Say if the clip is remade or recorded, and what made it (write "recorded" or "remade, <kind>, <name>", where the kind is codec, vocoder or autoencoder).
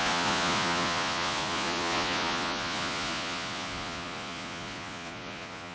remade, vocoder, Vocos